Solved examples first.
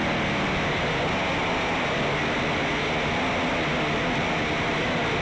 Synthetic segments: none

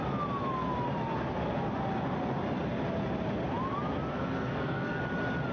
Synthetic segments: 4.1-5.0

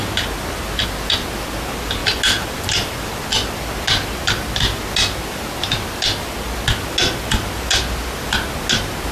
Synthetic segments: none

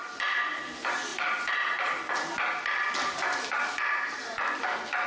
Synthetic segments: none

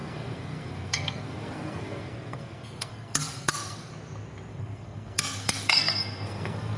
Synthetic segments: 0.0-3.9; 4.5-6.8

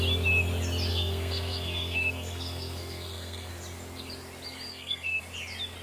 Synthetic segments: 0.9-3.5; 4.7-5.2

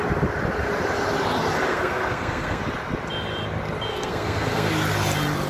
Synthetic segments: 1.7-2.6; 3.9-4.7